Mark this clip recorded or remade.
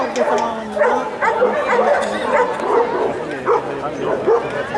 recorded